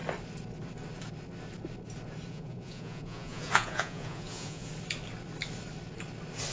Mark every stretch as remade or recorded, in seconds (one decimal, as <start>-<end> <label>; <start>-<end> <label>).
0.0-2.3 recorded; 2.3-4.7 remade; 4.7-6.5 recorded